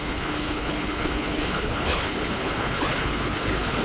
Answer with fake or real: fake